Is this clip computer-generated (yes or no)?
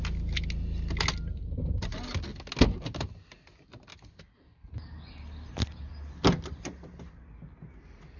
no